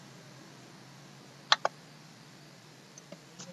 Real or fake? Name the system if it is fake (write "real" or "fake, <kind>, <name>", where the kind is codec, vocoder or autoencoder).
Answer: real